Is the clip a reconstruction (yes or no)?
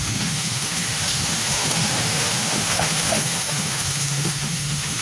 yes